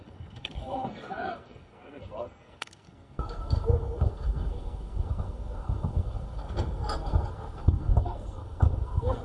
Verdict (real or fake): fake